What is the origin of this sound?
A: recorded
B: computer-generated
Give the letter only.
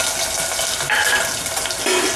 A